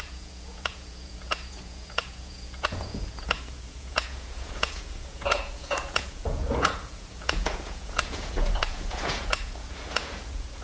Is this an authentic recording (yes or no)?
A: no